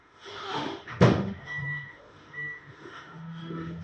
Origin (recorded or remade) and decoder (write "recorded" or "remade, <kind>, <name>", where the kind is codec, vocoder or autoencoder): remade, autoencoder, DAC-VAE